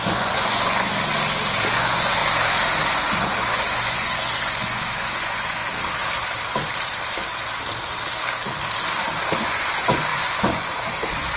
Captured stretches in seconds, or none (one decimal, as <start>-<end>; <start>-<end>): 0.9-1.7; 2.2-2.9; 5.6-9.4